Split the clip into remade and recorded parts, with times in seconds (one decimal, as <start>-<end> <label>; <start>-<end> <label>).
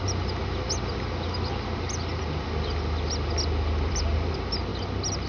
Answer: 0.0-5.3 recorded